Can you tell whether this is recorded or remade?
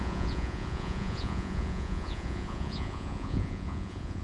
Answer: remade